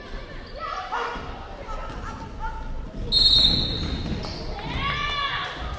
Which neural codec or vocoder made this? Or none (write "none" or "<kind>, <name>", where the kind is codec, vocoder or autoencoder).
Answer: none